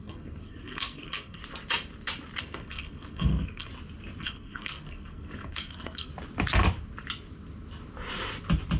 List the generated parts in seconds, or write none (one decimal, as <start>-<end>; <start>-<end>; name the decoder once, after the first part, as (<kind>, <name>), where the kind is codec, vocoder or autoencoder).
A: 0.0-1.4 (codec, SNAC); 2.4-3.7; 4.2-6.1